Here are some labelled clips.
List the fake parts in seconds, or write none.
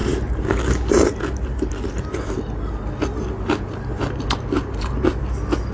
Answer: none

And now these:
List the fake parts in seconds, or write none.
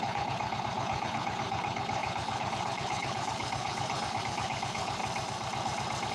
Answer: 0.0-5.0 (codec, HILCodec)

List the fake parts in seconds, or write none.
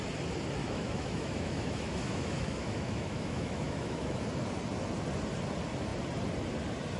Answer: 0.6-4.2 (autoencoder, DAC-VAE)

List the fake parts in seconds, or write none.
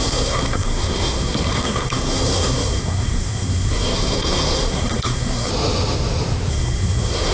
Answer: 0.0-5.5 (codec, SNAC); 6.5-7.3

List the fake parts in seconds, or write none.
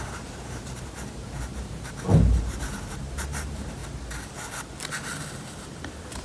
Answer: 0.0-3.8 (vocoder, BigVGAN v2); 5.5-6.2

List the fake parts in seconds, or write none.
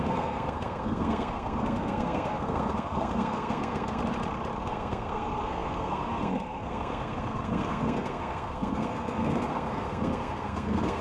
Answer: 0.0-4.0 (codec, SNAC); 4.6-11.0